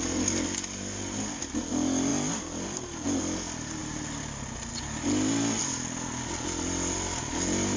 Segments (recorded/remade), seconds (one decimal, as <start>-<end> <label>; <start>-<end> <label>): 0.0-7.8 recorded